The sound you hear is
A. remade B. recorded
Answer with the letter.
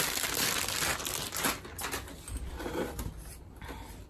B